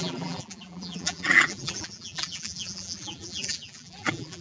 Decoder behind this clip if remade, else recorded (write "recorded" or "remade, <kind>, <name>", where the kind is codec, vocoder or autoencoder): remade, vocoder, BigVGAN v2